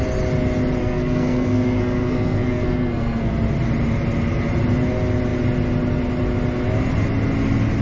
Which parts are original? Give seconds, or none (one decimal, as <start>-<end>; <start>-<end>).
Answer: 0.0-0.8; 3.3-7.8